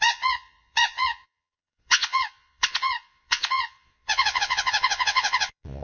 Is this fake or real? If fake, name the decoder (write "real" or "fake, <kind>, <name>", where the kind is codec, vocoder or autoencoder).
fake, vocoder, Vocos